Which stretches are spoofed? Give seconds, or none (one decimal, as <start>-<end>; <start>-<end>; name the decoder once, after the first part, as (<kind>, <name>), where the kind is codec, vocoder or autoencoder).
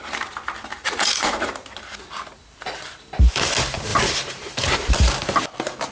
0.7-1.5 (vocoder, Vocos)